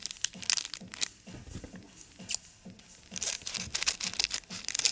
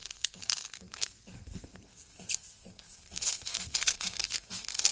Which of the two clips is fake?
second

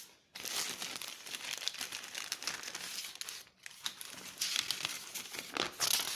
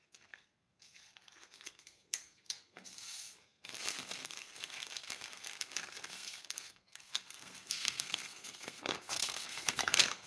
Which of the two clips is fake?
second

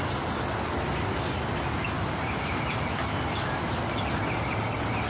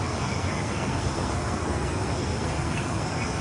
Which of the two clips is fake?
second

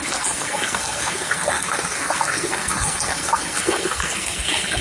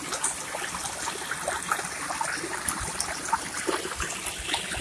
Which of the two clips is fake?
first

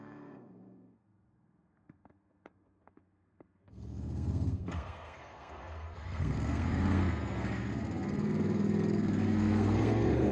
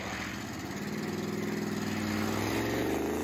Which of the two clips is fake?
first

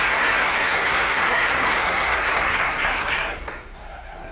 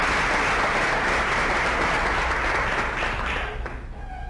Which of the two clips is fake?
first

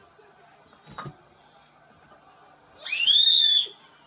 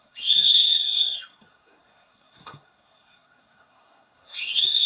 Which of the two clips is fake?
second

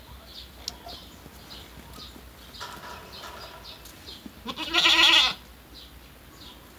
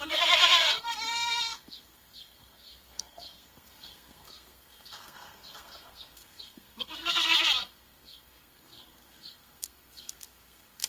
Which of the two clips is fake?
second